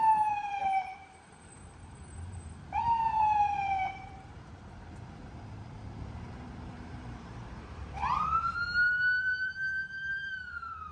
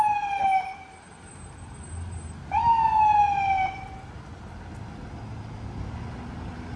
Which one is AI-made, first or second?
first